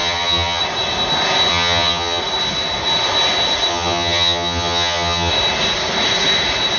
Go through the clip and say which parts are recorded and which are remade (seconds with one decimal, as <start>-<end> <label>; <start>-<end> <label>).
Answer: 0.0-0.6 remade; 0.6-1.5 recorded; 1.5-2.2 remade; 2.2-3.7 recorded; 3.7-5.3 remade; 5.3-6.8 recorded